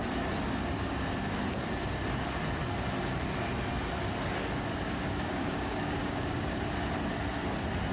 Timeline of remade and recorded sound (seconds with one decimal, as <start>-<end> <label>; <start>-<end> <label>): 0.0-4.7 recorded; 4.7-6.7 remade; 6.7-7.9 recorded